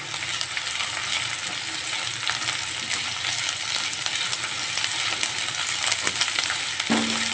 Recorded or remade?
recorded